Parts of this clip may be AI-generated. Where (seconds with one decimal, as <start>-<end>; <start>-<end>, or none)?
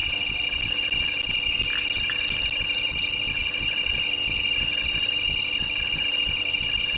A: none